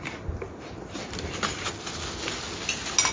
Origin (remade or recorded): recorded